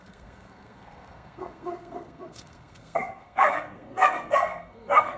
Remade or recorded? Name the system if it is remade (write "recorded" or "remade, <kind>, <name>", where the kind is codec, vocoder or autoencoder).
remade, codec, SNAC